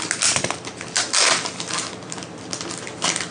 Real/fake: real